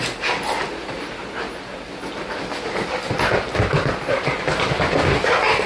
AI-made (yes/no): no